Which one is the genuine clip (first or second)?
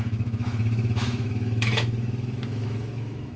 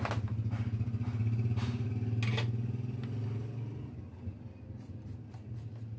second